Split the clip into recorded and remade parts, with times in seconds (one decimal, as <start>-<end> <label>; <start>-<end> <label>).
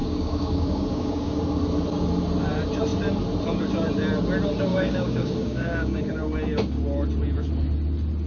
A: 0.0-1.4 remade; 1.4-4.7 recorded; 4.7-6.0 remade; 6.0-8.3 recorded